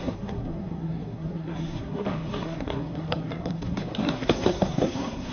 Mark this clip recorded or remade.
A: remade